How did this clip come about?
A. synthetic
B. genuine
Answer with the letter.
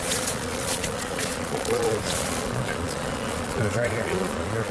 A